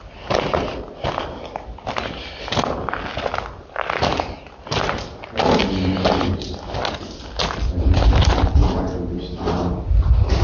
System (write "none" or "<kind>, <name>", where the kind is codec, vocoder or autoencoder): none